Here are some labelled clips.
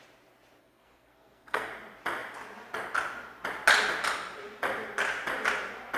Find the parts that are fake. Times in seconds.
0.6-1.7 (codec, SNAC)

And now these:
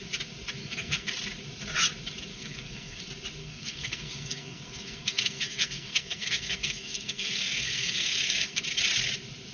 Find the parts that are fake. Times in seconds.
0.6-1.1 (codec, SNAC); 2.3-3.0; 3.4-8.6

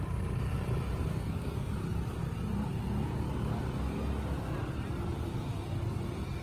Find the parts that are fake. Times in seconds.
1.1-1.7 (codec, SNAC)

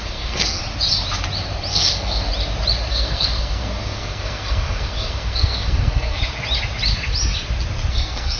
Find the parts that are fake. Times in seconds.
0.0-0.6 (codec, SNAC); 1.7-2.3; 2.9-6.2; 7.9-8.4

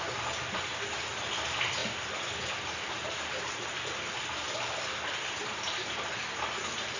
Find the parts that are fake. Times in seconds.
none

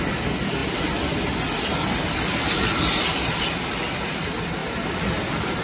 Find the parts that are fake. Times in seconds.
none

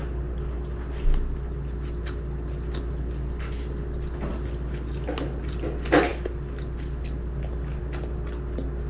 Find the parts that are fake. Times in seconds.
none